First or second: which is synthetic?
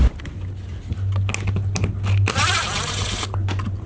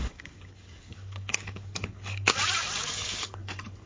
second